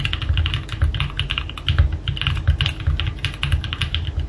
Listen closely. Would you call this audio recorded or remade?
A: recorded